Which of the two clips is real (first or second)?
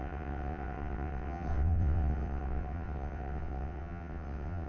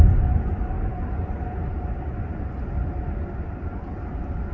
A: second